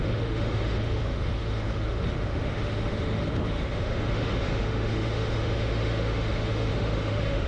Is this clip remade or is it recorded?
remade